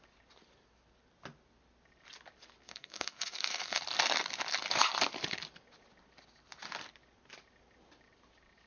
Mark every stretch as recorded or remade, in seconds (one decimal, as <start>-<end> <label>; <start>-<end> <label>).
0.0-2.6 recorded; 2.6-3.8 remade; 3.8-8.7 recorded